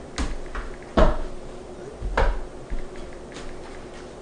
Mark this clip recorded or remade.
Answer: recorded